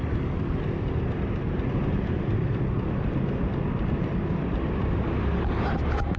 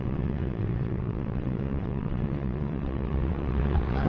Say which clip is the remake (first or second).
second